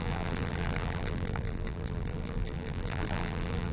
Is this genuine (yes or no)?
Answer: no